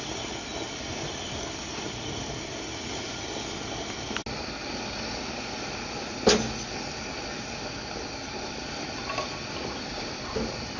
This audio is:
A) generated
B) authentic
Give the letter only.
B